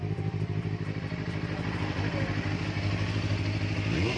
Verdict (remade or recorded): recorded